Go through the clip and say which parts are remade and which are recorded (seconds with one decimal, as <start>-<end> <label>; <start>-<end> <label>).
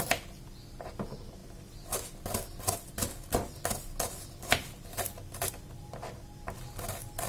0.0-7.3 recorded